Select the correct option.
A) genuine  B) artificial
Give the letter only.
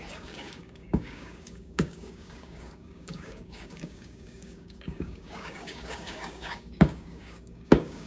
B